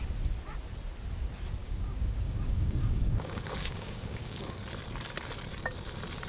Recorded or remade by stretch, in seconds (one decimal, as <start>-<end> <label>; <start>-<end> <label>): 0.0-1.6 recorded; 1.6-4.6 remade; 4.6-6.3 recorded